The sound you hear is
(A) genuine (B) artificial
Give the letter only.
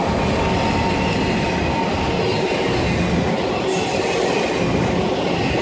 A